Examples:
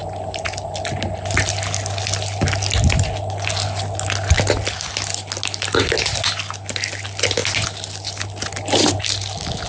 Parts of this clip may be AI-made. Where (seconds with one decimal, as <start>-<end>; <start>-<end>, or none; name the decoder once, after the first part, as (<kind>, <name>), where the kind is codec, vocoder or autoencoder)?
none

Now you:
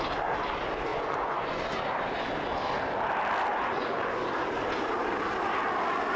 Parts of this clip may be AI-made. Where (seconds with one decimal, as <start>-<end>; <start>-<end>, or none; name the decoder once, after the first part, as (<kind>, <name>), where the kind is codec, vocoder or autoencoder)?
0.9-1.6 (vocoder, Vocos); 3.5-4.3

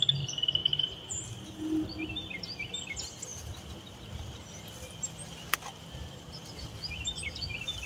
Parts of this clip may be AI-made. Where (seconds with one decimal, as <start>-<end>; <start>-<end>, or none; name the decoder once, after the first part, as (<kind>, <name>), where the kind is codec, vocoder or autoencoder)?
0.6-2.7 (vocoder, BigVGAN v2)

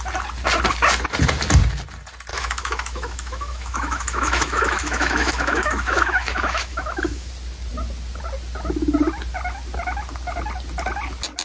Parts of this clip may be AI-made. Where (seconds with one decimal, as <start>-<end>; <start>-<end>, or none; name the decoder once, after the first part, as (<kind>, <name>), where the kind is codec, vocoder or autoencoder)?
2.3-7.3 (autoencoder, DAC-VAE)

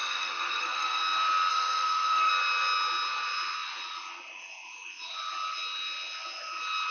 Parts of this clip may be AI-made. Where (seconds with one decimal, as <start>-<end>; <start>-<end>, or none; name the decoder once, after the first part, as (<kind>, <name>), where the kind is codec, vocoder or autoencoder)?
0.0-1.0 (codec, SNAC); 1.5-2.3

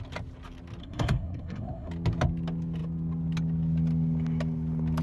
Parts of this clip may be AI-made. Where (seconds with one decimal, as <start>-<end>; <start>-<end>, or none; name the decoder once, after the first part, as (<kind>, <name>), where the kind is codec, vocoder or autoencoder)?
0.8-1.9 (codec, SNAC)